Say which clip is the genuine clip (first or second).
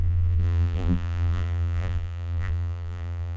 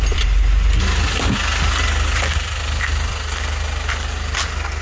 second